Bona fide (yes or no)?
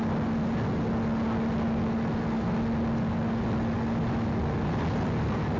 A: yes